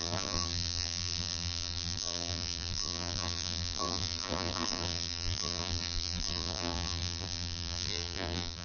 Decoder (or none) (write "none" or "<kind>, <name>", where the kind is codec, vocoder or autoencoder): vocoder, BigVGAN v2